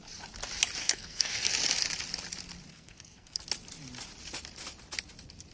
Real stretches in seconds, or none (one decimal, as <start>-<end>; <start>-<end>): 0.0-0.8; 1.5-2.7; 3.4-5.5